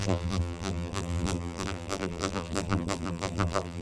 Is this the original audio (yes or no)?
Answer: no